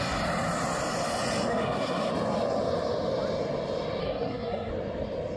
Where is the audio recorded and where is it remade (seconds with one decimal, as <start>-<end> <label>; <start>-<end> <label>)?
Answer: 0.0-1.5 recorded; 1.5-2.1 remade; 2.1-4.0 recorded; 4.0-4.7 remade; 4.7-5.4 recorded

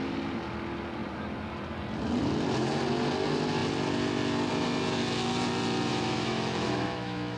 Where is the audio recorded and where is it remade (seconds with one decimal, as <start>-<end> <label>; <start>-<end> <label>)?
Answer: 0.0-5.9 recorded; 5.9-7.4 remade

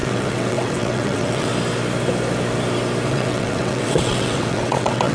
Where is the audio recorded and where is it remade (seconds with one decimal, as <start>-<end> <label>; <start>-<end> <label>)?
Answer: 0.0-1.5 remade; 1.5-3.1 recorded; 3.1-5.1 remade

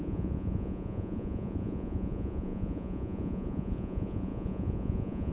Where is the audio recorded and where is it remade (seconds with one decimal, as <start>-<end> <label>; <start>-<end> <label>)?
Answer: 0.0-5.3 remade

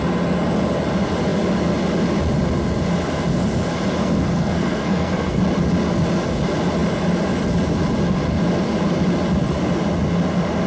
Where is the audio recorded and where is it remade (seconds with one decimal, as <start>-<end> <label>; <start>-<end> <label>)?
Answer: 0.0-4.0 recorded; 4.0-5.4 remade; 5.4-10.7 recorded

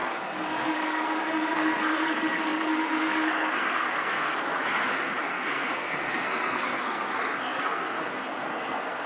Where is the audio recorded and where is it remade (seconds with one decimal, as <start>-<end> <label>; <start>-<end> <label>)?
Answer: 0.0-9.1 remade